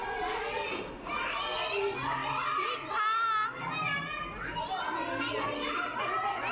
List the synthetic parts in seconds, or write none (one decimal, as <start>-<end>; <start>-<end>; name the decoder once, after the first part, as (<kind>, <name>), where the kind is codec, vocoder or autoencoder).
none